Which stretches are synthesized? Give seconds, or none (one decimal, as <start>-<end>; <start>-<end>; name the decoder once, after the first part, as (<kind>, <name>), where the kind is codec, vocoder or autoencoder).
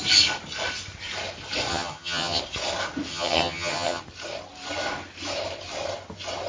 1.7-2.4 (vocoder, HiFi-GAN); 3.1-4.0